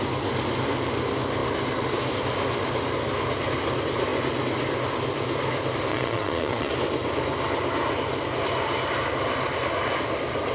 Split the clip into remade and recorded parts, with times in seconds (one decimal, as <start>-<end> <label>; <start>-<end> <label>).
0.0-5.9 recorded; 5.9-6.7 remade; 6.7-10.5 recorded